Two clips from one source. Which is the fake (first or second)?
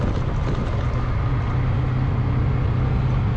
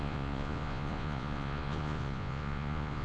second